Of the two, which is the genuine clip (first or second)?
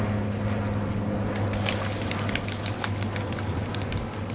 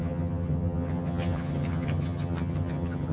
first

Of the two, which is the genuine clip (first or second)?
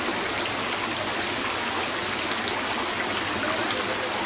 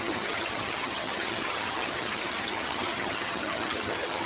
first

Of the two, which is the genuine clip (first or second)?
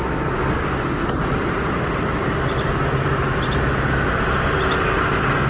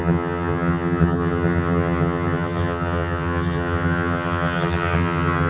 first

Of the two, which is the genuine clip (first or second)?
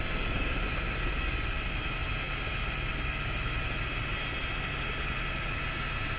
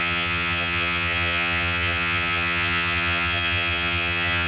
first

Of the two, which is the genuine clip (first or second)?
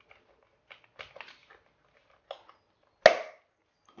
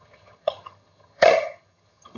first